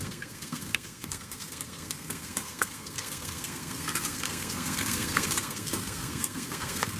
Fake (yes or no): yes